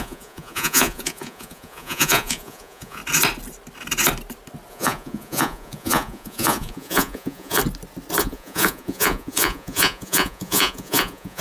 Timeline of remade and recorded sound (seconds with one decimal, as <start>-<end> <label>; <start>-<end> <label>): 0.0-3.0 remade; 3.0-4.7 recorded; 4.7-7.6 remade; 7.6-8.2 recorded; 8.2-11.4 remade